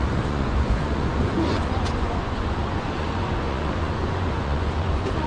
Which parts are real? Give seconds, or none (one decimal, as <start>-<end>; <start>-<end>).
none